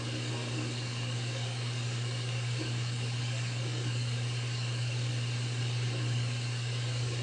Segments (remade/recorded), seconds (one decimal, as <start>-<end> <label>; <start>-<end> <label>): 0.0-5.1 remade; 5.1-5.6 recorded; 5.6-7.2 remade